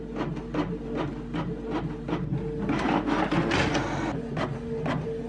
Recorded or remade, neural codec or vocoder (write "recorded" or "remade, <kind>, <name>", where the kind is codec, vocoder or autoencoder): recorded